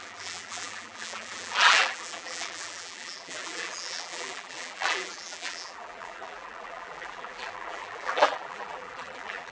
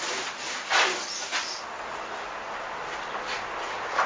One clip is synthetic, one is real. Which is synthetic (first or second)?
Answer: first